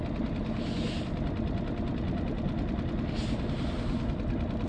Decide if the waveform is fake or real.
real